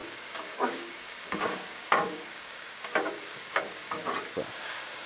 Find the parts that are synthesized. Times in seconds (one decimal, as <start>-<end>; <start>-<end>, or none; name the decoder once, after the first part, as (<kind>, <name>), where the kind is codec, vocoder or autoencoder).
0.0-4.0 (codec, DAC); 4.5-5.1